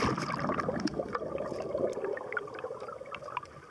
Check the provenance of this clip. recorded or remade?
recorded